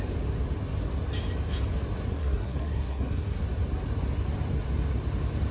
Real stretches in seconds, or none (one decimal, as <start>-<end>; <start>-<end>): 0.0-2.1; 3.4-5.5